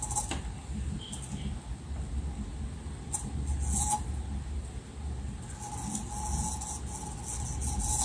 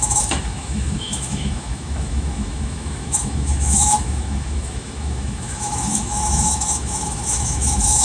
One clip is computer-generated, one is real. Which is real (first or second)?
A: first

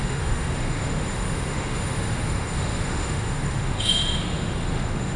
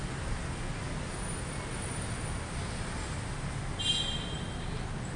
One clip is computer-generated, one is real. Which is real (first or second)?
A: second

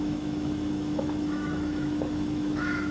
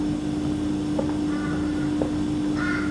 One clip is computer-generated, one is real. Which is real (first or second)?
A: second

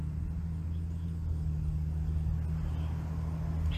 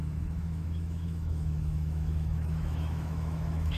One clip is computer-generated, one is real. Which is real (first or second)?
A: first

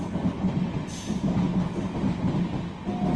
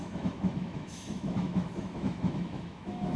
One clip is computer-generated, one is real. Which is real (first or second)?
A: first